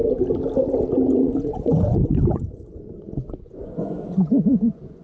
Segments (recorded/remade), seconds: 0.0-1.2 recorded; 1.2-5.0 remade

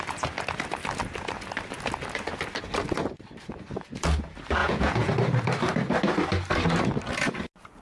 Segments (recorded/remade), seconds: 0.0-4.6 recorded; 4.6-5.1 remade; 5.1-7.8 recorded

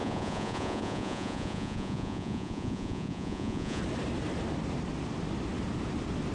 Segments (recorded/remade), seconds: 0.0-3.8 remade; 3.8-6.3 recorded